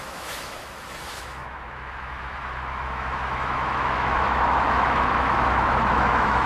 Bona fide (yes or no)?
no